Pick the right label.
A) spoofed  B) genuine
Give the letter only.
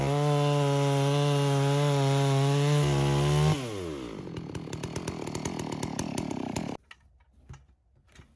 B